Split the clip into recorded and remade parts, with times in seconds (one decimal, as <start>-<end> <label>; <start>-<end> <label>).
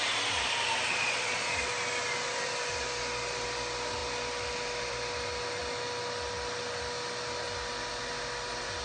0.0-0.9 recorded; 0.9-1.7 remade; 1.7-8.8 recorded